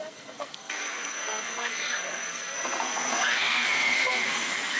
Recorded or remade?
remade